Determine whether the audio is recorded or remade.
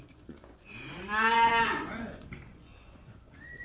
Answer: remade